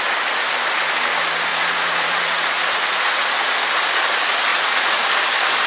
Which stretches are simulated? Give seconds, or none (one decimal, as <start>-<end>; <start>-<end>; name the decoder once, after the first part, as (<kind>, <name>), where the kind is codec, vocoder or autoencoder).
1.5-3.5 (vocoder, Vocos); 4.5-5.1